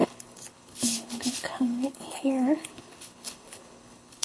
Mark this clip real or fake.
fake